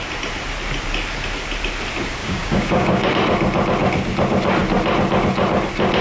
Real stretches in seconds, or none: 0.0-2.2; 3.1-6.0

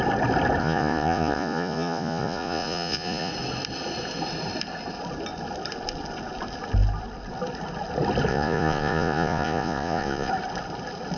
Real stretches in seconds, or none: 0.0-0.6; 3.3-8.3; 10.3-11.2

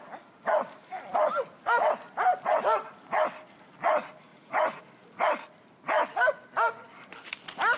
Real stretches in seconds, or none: 0.0-4.3; 4.8-7.8

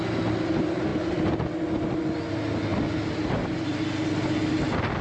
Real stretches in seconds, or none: 0.0-5.0

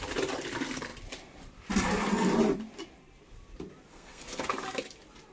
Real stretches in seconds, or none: 0.0-3.9; 4.4-5.3

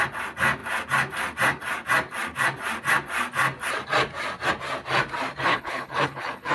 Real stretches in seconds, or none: 0.0-5.5

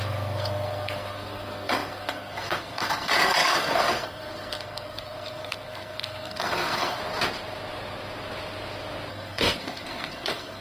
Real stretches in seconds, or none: 7.0-9.1